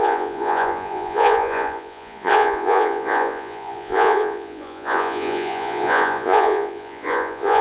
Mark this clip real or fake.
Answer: fake